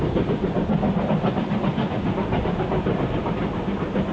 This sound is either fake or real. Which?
real